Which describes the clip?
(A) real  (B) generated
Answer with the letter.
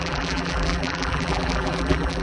B